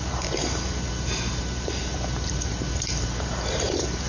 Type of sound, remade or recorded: remade